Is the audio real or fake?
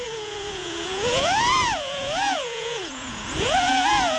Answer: fake